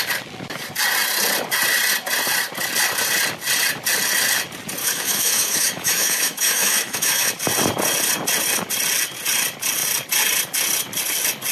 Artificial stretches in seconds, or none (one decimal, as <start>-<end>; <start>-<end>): 4.8-7.3

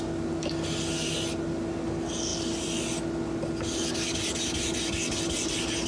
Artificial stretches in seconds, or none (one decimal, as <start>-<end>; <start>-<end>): none